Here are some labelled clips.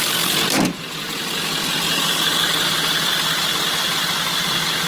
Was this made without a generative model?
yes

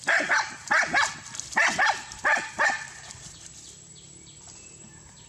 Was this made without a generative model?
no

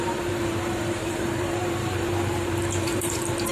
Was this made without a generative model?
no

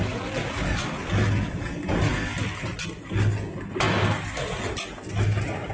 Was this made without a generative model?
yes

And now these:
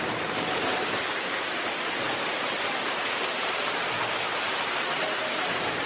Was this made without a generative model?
no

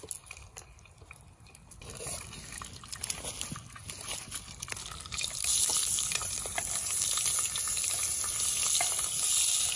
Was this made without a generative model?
yes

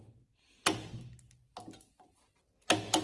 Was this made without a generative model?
yes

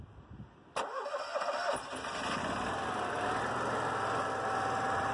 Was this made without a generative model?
yes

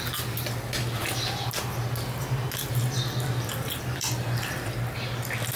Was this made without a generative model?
yes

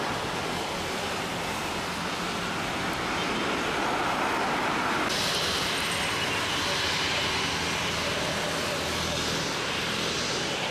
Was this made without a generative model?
yes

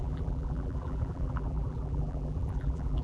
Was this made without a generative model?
no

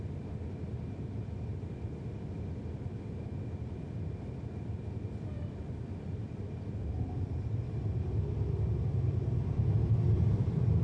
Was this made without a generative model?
no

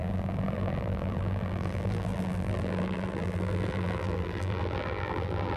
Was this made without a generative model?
no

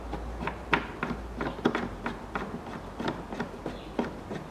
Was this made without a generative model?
yes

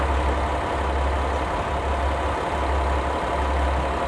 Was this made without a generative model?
yes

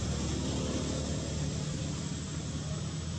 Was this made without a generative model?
yes